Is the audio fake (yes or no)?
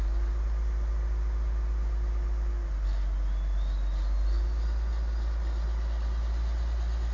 no